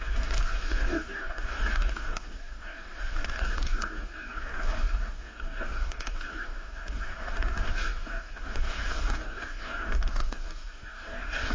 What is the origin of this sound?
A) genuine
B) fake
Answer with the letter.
B